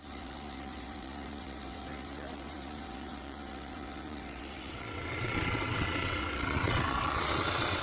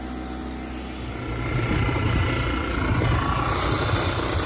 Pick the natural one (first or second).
second